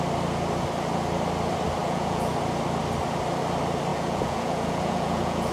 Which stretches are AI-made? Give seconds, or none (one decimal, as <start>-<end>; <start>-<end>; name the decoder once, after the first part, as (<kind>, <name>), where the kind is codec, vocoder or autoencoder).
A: 1.8-2.3 (vocoder, Vocos); 3.9-5.5